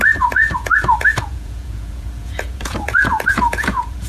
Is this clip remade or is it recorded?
remade